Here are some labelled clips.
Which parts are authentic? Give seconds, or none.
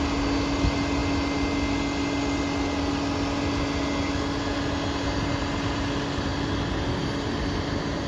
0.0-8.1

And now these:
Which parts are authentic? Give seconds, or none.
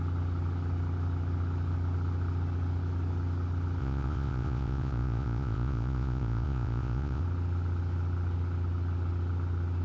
0.0-3.8; 7.2-9.8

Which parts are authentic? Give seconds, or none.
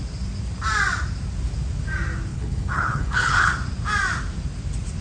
0.0-2.3; 3.5-5.0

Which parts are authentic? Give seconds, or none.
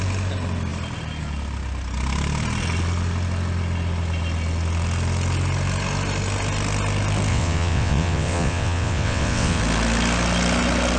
0.0-7.3; 9.6-11.0